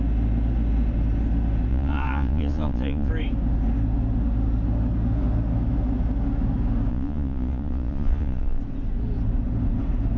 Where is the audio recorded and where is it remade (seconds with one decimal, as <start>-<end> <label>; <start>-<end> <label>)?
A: 0.0-1.7 recorded; 1.7-3.1 remade; 3.1-6.9 recorded; 6.9-8.6 remade; 8.6-10.2 recorded